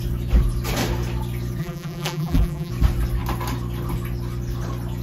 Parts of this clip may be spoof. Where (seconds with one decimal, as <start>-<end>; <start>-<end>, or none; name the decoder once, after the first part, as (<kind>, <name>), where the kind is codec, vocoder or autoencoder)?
1.6-2.7 (vocoder, BigVGAN v2)